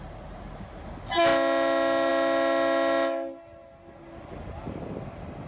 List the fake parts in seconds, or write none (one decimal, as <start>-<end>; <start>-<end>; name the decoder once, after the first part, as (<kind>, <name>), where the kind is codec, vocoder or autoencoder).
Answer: none